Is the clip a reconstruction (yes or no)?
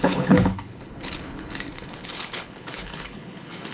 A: yes